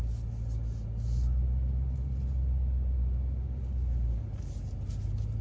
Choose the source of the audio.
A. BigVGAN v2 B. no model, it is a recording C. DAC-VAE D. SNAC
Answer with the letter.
B